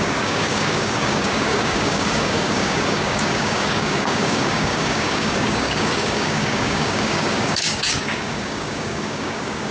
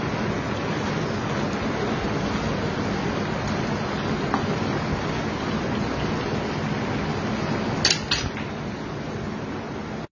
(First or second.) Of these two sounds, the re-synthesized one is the first